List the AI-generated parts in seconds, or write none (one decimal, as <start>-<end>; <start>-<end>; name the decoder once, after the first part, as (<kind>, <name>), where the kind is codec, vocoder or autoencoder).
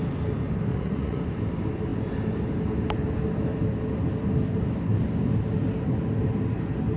0.7-1.2 (vocoder, Vocos)